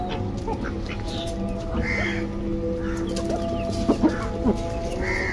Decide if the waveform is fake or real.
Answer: real